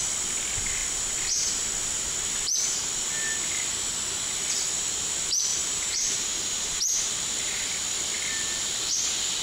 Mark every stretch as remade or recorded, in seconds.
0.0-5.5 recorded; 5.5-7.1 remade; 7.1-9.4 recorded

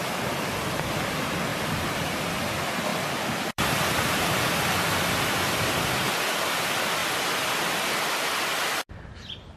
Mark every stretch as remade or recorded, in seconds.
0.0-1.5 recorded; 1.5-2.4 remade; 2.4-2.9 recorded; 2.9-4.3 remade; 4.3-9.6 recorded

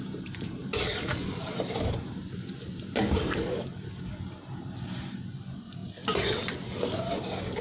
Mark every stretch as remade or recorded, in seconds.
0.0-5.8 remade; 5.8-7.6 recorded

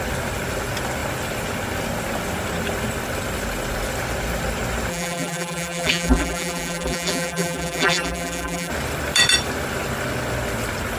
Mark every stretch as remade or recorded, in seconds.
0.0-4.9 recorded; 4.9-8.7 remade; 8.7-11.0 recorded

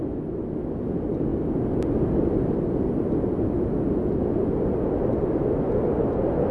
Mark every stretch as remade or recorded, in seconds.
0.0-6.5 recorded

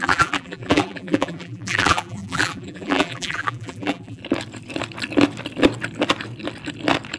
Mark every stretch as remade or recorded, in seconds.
0.0-4.2 remade; 4.2-7.2 recorded

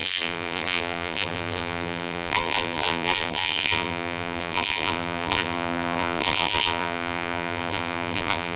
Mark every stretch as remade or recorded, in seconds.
0.0-8.6 remade